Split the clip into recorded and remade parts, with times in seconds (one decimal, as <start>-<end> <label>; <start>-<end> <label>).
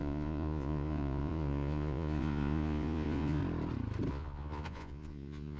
0.0-3.4 remade; 3.4-4.1 recorded; 4.1-5.6 remade